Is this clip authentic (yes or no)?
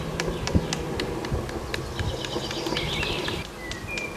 yes